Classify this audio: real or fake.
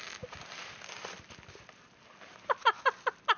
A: real